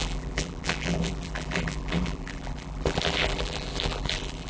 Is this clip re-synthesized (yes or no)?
yes